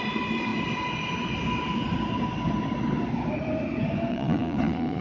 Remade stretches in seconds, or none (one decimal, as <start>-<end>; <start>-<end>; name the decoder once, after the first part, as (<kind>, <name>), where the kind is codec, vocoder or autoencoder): 4.1-5.0 (vocoder, Vocos)